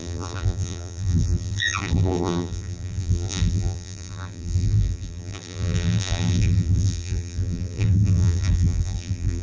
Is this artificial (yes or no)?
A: yes